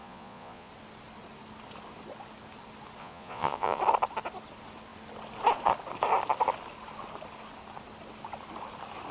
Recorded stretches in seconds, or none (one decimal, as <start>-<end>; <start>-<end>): 0.7-3.0; 3.8-9.1